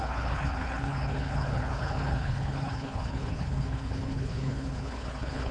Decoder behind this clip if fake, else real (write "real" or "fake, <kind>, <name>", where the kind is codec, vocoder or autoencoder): fake, codec, HILCodec